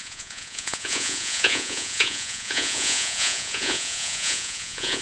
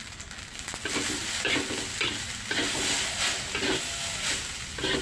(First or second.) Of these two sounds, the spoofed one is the first